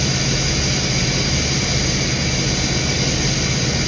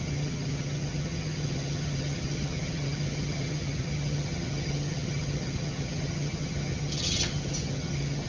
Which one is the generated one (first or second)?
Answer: second